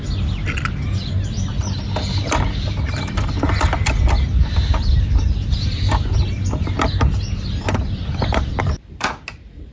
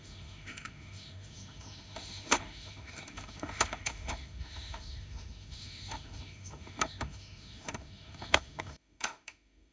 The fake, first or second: second